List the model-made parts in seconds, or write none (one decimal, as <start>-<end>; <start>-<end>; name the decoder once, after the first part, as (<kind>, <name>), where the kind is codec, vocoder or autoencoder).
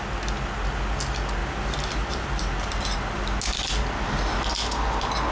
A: 1.4-3.2 (vocoder, BigVGAN v2)